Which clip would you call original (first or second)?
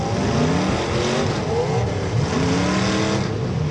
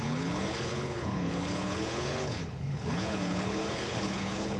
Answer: first